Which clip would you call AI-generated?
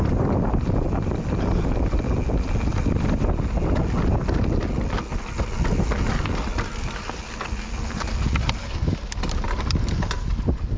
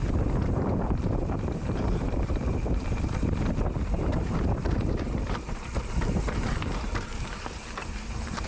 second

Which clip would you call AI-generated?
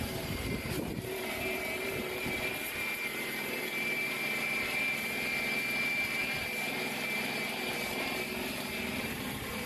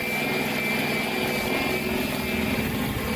first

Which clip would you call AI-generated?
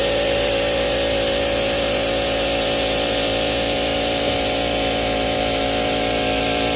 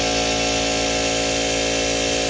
first